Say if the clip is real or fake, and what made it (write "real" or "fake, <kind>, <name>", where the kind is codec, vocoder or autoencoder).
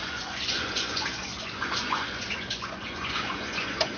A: fake, vocoder, Vocos